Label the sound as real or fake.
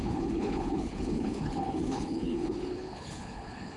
fake